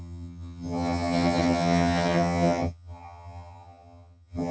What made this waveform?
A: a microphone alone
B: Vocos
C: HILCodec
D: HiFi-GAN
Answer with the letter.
D